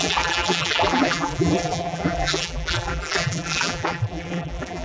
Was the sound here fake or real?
fake